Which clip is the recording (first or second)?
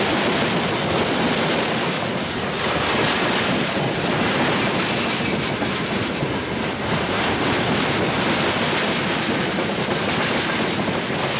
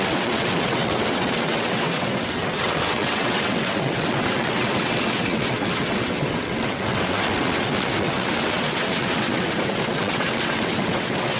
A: first